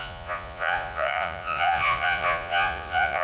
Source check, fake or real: fake